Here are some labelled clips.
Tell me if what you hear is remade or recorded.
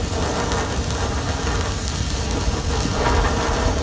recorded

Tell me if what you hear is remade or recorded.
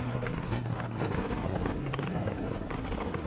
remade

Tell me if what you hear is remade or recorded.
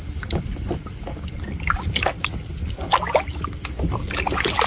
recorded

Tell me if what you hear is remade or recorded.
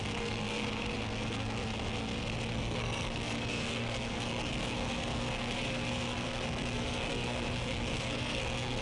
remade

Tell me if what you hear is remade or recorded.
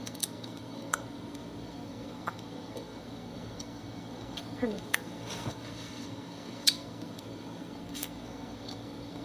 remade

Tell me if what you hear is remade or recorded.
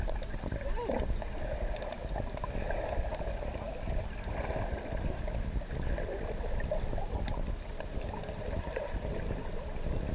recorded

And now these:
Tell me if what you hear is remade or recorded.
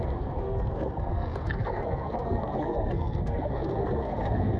remade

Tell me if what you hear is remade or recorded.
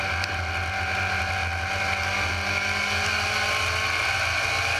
recorded